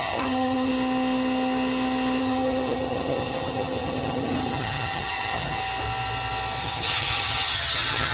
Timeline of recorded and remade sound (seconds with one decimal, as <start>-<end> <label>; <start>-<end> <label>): 0.0-0.7 remade; 0.7-2.2 recorded; 2.2-5.6 remade; 5.6-6.6 recorded; 6.6-8.1 remade